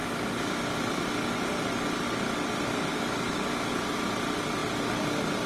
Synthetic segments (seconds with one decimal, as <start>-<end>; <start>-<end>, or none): 2.9-3.7